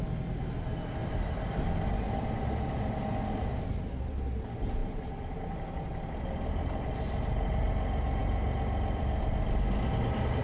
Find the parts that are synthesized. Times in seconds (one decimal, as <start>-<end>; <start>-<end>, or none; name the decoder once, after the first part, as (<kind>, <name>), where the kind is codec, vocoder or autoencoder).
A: none

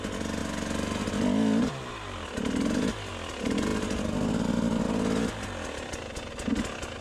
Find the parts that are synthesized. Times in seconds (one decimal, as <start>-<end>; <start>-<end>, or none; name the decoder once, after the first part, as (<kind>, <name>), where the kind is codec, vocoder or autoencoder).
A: none